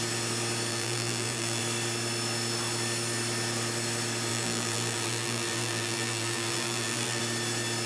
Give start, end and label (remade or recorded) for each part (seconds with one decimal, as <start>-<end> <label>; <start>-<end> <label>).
0.0-0.7 recorded; 0.7-1.6 remade; 1.6-4.3 recorded; 4.3-7.2 remade; 7.2-7.9 recorded

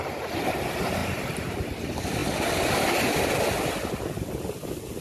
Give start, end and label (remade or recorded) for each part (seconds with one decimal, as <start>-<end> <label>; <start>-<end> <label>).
0.0-5.0 recorded

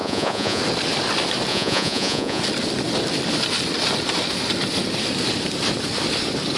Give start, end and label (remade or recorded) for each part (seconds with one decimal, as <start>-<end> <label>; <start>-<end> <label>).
0.0-0.6 remade; 0.6-1.5 recorded; 1.5-2.4 remade; 2.4-6.6 recorded

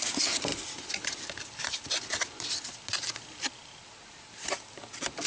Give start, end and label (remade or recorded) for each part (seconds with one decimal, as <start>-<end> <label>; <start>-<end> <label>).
0.0-5.3 recorded